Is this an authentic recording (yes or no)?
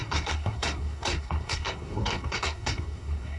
no